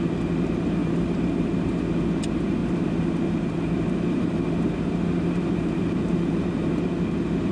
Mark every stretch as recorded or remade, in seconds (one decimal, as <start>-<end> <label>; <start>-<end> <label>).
0.0-0.8 recorded; 0.8-1.8 remade; 1.8-2.6 recorded; 2.6-6.7 remade; 6.7-7.5 recorded